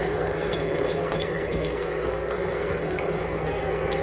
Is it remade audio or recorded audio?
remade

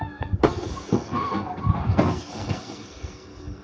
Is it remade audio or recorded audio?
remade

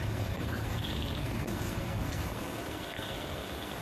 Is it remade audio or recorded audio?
remade